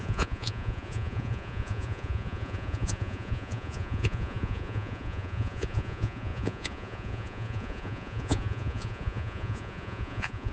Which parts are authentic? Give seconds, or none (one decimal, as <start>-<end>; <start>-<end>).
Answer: none